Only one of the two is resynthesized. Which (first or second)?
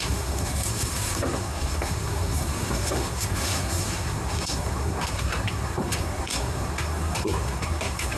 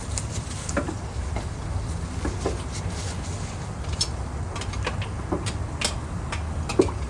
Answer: first